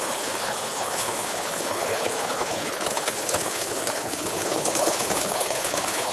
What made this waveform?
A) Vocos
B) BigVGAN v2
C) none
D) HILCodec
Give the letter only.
D